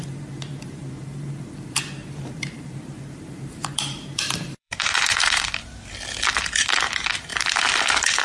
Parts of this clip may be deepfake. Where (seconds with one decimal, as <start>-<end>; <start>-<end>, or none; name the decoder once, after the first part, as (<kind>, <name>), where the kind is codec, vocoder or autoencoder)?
2.0-5.5 (vocoder, BigVGAN v2)